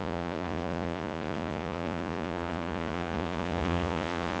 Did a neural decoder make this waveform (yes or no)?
yes